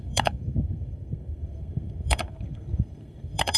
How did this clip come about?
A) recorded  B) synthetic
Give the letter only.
B